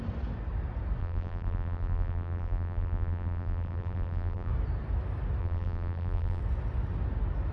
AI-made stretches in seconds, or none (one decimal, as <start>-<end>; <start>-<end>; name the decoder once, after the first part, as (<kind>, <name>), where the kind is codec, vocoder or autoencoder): 1.0-4.5 (vocoder, BigVGAN v2); 5.4-6.4